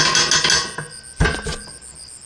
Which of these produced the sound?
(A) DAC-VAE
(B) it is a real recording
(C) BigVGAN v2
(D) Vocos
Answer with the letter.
B